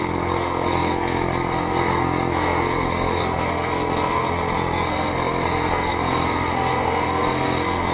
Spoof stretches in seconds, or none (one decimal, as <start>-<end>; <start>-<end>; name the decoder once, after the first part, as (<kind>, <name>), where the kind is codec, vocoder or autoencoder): 0.0-7.9 (codec, SNAC)